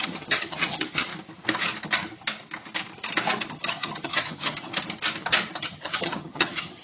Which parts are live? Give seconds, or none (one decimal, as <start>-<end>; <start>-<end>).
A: 1.1-3.5; 4.7-5.6